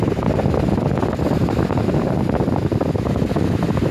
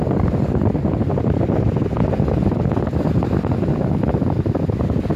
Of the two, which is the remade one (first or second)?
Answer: second